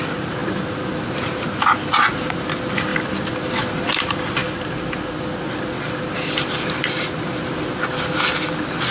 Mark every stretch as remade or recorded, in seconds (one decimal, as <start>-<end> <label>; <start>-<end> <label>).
0.0-8.9 recorded